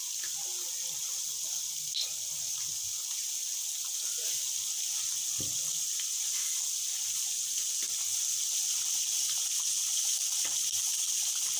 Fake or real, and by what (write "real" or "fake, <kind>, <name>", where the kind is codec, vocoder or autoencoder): real